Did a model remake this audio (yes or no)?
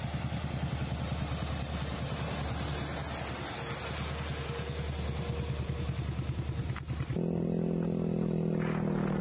no